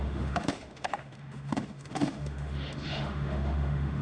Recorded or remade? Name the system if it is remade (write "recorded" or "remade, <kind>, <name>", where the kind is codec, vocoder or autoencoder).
remade, autoencoder, DAC-VAE